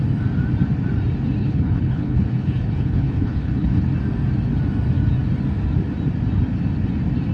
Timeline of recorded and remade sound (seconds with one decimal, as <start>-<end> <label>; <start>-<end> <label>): 0.0-1.4 recorded; 1.4-3.8 remade; 3.8-7.3 recorded